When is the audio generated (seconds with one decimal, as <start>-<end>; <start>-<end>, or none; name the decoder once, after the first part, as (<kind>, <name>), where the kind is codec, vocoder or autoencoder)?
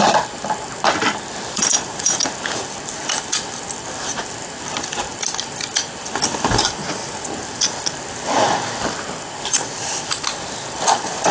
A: none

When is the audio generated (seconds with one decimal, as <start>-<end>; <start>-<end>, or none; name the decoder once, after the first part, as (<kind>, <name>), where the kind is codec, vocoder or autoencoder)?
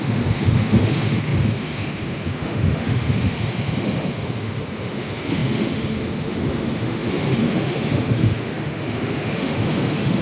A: 0.0-10.2 (autoencoder, DAC-VAE)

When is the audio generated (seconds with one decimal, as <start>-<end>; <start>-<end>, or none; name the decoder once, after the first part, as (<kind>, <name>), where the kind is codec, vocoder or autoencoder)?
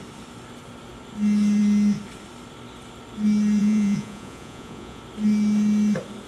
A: 3.6-5.0 (vocoder, Vocos)